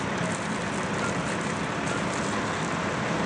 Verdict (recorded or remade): recorded